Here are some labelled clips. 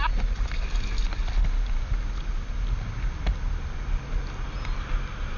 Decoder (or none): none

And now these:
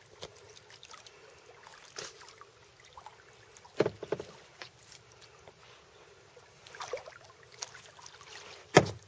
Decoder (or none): none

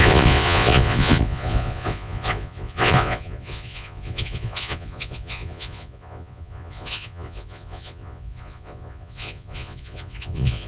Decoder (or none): vocoder, Vocos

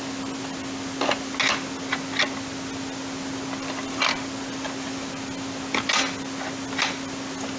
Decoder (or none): none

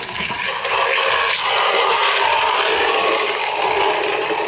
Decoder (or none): none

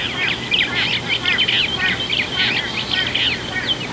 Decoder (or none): none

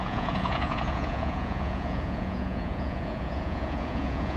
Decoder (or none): vocoder, Vocos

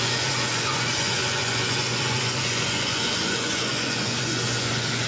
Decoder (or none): vocoder, Vocos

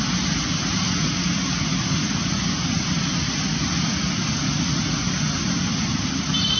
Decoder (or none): none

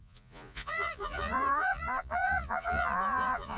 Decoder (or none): vocoder, Vocos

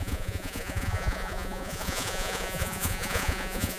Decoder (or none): vocoder, Vocos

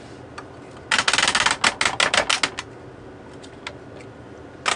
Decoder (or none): none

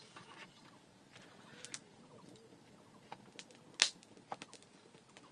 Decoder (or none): none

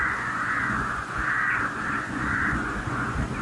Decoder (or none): vocoder, Vocos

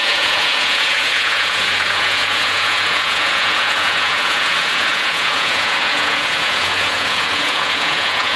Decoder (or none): vocoder, Vocos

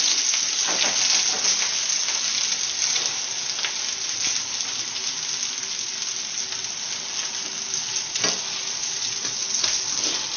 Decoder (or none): none